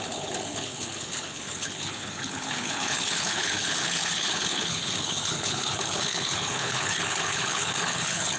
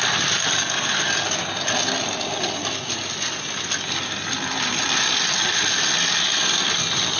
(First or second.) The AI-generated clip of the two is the first